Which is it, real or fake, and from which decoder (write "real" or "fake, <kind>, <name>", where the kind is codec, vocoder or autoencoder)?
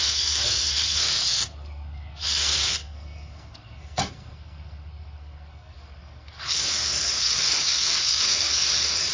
fake, codec, SNAC